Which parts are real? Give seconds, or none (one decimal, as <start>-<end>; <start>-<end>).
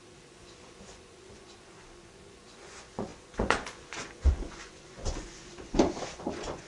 none